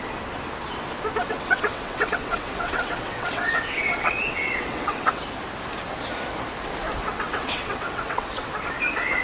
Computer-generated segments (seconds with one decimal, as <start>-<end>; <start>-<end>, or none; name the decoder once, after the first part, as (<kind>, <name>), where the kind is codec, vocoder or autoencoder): 1.2-5.2 (vocoder, WaveNeXt); 7.0-8.5

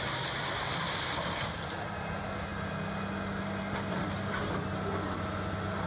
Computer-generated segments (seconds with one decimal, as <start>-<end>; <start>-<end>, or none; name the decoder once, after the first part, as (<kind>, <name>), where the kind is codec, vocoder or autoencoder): none

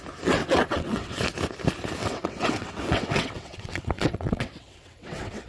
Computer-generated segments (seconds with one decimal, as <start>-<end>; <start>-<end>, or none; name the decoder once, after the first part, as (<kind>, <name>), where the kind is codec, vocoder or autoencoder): 0.4-1.2 (vocoder, WaveNeXt); 2.0-5.5

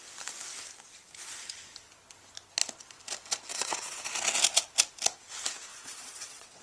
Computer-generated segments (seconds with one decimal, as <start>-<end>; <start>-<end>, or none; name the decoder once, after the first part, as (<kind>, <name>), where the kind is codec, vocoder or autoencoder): 3.5-4.0 (vocoder, WaveNeXt); 5.7-6.6